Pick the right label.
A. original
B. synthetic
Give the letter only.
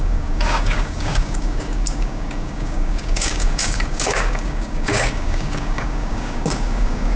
B